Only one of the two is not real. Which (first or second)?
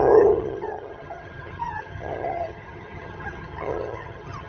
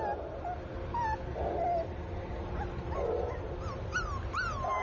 first